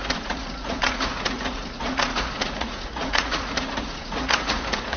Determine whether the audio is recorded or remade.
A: remade